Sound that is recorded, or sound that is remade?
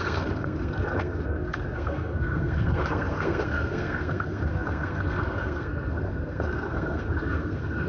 remade